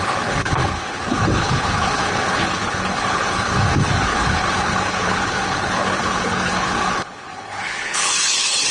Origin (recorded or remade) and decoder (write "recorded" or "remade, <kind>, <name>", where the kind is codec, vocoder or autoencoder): remade, codec, HILCodec